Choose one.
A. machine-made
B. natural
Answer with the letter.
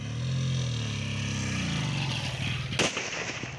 B